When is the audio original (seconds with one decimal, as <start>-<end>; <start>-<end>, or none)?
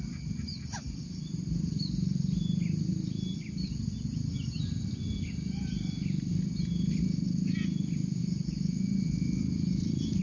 0.0-10.2